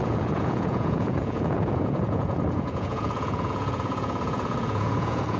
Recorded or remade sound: remade